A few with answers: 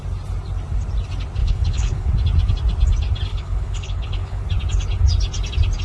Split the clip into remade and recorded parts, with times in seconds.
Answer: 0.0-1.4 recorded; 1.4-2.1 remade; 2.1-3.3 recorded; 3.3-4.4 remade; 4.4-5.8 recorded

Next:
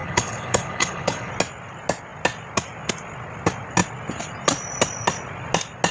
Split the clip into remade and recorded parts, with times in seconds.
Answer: 0.0-1.3 remade; 1.3-5.9 recorded

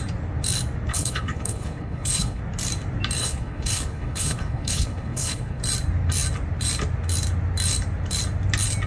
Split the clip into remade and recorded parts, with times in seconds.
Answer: 0.0-0.9 recorded; 0.9-2.4 remade; 2.4-3.2 recorded; 3.2-5.6 remade; 5.6-8.9 recorded

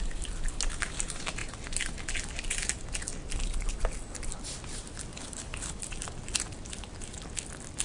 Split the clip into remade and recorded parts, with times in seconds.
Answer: 0.0-5.1 recorded; 5.1-5.9 remade; 5.9-7.8 recorded

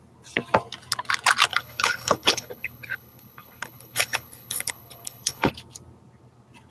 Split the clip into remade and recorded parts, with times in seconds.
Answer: 0.0-1.5 recorded; 1.5-5.5 remade; 5.5-6.7 recorded

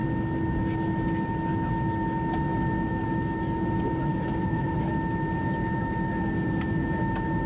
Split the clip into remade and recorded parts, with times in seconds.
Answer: 0.0-4.1 recorded; 4.1-4.9 remade; 4.9-7.5 recorded

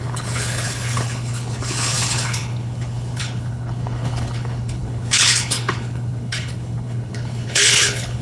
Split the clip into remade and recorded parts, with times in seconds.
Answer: 0.0-8.2 remade

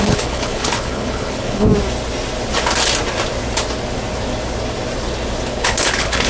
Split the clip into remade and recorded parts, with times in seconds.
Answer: 0.0-1.7 remade; 1.7-5.5 recorded; 5.5-6.3 remade